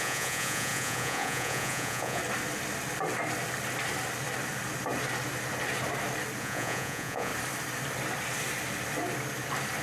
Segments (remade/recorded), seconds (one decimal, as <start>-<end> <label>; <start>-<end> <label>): 0.0-2.2 remade; 2.2-6.4 recorded; 6.4-7.3 remade; 7.3-9.8 recorded